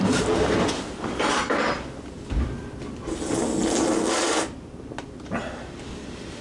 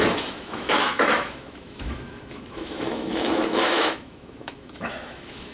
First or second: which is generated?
second